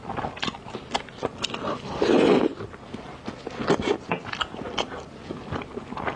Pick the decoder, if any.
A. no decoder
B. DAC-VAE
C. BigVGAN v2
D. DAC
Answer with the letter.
A